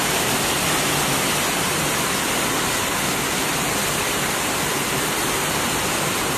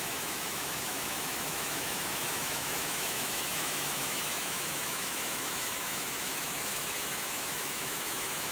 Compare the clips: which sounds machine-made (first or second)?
second